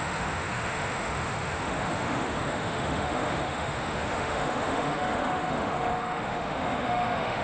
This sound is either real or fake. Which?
fake